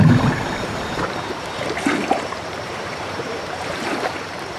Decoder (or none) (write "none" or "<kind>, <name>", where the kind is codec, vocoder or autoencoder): vocoder, BigVGAN v2